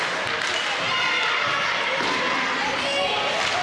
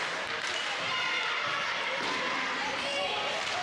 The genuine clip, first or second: first